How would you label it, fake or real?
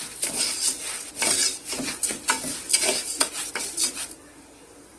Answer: real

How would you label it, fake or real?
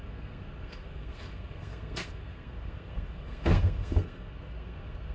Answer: fake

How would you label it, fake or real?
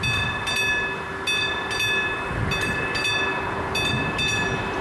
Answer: real